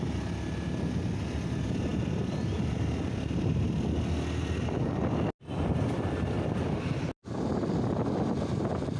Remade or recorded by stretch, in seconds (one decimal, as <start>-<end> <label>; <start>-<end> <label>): 0.0-9.0 recorded